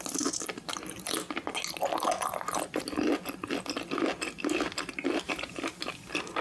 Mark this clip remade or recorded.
recorded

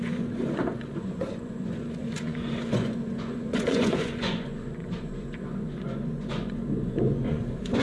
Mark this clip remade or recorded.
remade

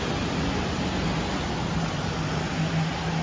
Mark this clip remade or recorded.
recorded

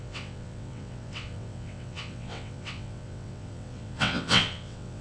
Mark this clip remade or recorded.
remade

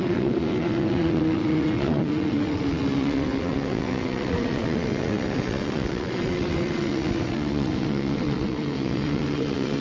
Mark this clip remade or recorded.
remade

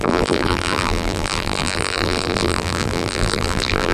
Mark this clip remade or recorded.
remade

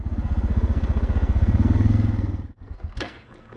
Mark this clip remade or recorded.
remade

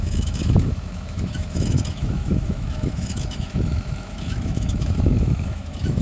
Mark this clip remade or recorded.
remade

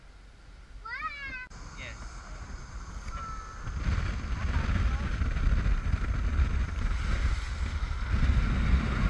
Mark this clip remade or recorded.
recorded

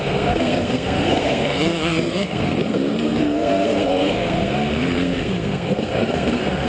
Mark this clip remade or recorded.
remade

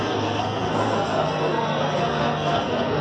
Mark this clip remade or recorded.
remade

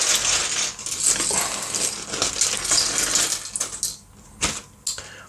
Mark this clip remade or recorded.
recorded